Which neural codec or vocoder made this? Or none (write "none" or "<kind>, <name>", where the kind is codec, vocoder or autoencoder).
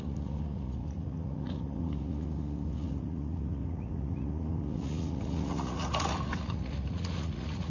vocoder, Vocos